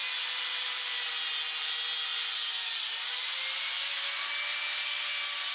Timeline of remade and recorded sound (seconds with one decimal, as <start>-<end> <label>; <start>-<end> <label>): 0.0-1.0 remade; 1.0-2.1 recorded; 2.1-4.0 remade; 4.0-5.5 recorded